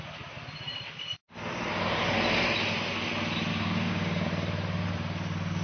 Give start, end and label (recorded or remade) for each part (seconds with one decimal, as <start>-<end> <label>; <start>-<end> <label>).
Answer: 0.0-3.5 recorded; 3.5-4.3 remade; 4.3-5.6 recorded